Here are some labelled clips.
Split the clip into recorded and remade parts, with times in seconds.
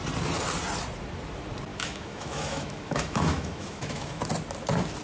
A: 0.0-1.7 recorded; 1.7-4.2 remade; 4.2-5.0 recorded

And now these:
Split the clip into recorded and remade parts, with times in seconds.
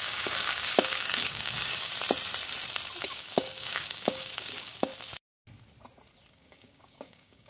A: 0.0-1.9 remade; 1.9-3.0 recorded; 3.0-4.9 remade; 4.9-6.3 recorded; 6.3-7.5 remade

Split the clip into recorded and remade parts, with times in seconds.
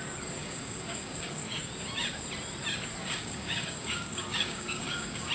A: 0.0-0.4 recorded; 0.4-1.6 remade; 1.6-3.0 recorded; 3.0-5.3 remade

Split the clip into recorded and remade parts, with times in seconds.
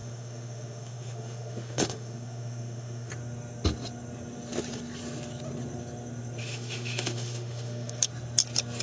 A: 0.0-3.1 remade; 3.1-6.4 recorded; 6.4-8.1 remade; 8.1-8.8 recorded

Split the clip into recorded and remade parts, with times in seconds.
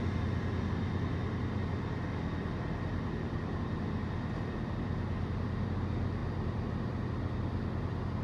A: 0.0-8.2 recorded